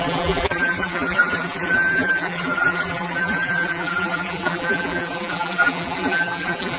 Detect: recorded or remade remade